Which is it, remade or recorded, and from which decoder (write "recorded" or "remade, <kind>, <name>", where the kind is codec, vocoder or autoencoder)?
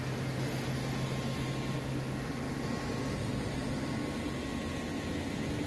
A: recorded